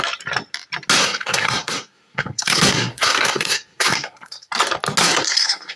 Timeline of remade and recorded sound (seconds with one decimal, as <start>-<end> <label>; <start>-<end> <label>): 0.0-1.0 recorded; 1.0-4.5 remade; 4.5-5.0 recorded; 5.0-5.8 remade

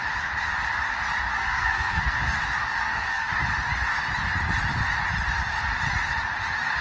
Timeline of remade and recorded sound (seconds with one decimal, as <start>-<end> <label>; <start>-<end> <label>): 0.0-1.4 recorded; 1.4-2.4 remade; 2.4-2.8 recorded; 2.8-3.3 remade; 3.3-6.8 recorded

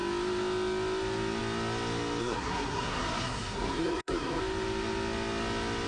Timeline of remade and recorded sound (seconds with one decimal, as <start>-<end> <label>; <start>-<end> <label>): 0.0-2.2 recorded; 2.2-4.4 remade; 4.4-5.9 recorded